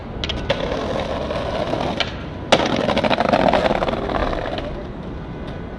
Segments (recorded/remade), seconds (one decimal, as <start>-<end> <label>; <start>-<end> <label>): 0.0-5.8 recorded